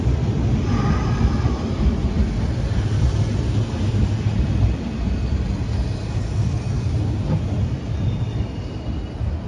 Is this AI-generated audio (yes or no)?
no